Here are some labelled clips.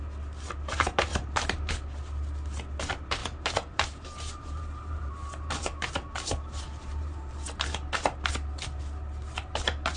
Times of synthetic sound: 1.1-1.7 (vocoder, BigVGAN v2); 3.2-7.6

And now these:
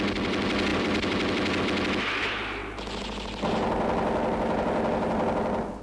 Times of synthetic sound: none

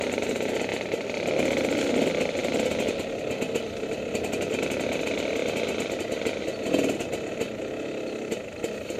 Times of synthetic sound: none